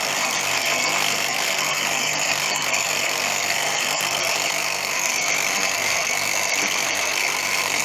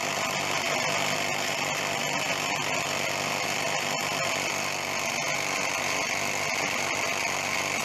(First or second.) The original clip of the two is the second